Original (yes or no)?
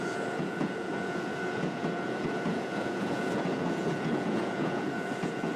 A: no